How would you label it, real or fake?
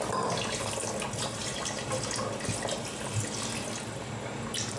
real